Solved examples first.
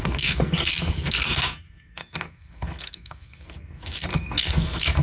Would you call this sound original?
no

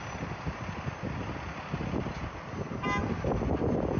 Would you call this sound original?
yes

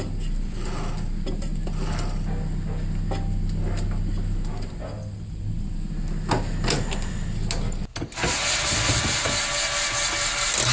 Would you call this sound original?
yes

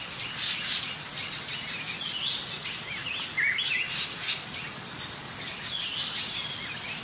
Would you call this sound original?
yes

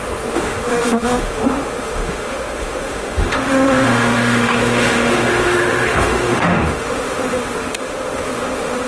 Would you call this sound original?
no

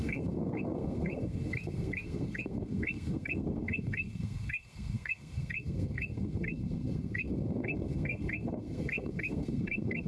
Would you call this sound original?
no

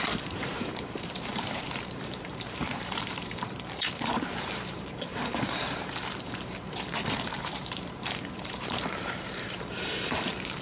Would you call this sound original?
no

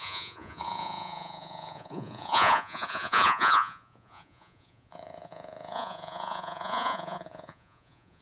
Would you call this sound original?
no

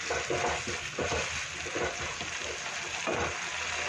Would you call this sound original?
yes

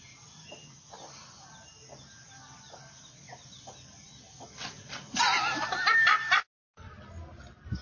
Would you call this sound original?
yes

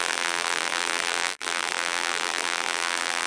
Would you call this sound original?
no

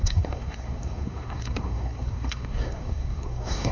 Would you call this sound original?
no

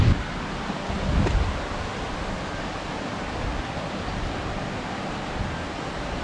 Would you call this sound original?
yes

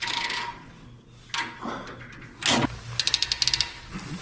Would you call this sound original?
yes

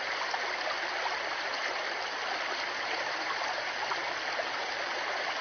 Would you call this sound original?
yes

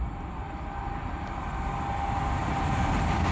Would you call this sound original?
yes